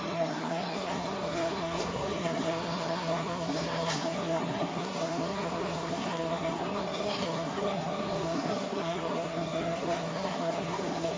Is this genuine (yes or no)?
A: no